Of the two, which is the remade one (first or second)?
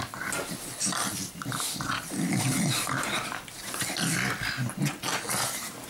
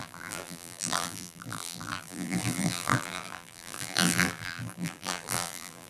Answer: second